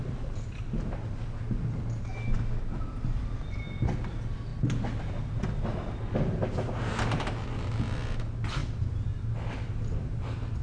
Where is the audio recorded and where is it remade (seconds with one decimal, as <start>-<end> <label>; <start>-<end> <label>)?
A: 0.0-10.6 recorded